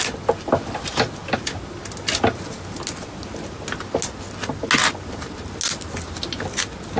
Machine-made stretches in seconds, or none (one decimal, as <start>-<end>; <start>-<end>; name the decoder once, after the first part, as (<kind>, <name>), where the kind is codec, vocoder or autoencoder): none